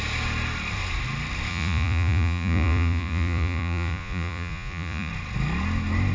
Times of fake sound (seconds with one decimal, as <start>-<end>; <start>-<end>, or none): 1.5-5.1